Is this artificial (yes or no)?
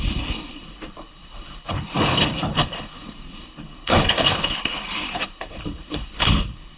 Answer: yes